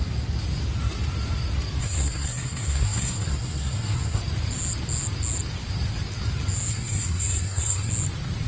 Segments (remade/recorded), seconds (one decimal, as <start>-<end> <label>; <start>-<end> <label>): 0.0-1.8 recorded; 1.8-4.2 remade; 4.2-6.7 recorded; 6.7-7.9 remade; 7.9-8.5 recorded